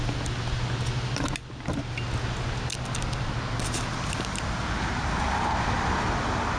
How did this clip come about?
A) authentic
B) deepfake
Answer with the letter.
A